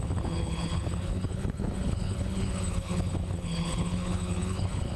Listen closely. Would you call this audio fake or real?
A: fake